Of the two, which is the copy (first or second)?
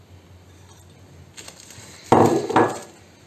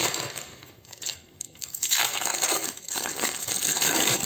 second